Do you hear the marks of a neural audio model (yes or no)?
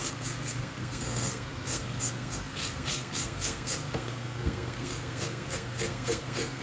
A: yes